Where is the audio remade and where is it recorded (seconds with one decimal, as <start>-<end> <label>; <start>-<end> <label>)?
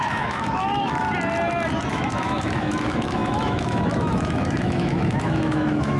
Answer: 0.0-1.0 remade; 1.0-1.9 recorded; 1.9-6.0 remade